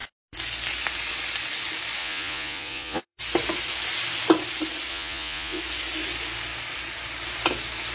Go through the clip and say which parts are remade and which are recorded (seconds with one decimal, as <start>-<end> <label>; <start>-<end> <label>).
0.0-2.0 recorded; 2.0-3.2 remade; 3.2-4.9 recorded; 4.9-5.6 remade; 5.6-7.9 recorded